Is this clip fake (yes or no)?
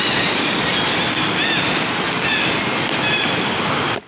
no